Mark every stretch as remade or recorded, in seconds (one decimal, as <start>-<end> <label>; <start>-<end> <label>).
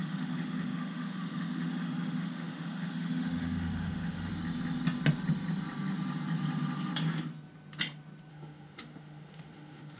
0.0-4.3 remade; 4.3-8.3 recorded; 8.3-10.0 remade